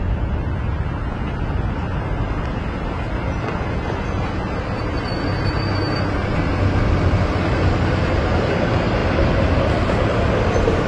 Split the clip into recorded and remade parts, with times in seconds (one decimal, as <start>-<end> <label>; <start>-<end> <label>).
0.0-10.9 recorded